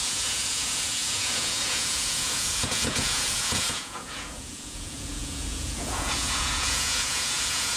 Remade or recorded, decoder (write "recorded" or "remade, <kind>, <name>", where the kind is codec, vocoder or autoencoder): remade, vocoder, Vocos